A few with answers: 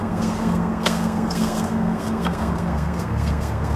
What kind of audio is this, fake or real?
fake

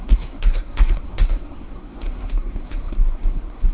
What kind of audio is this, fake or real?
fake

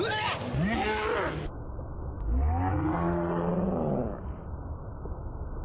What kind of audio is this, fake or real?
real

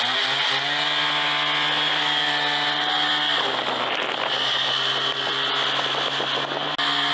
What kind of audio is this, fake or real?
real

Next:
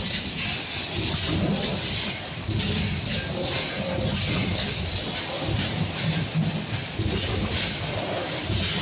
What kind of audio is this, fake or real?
real